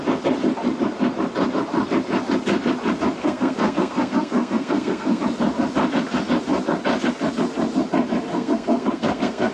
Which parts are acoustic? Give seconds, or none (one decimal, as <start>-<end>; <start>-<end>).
0.0-3.2; 5.2-8.3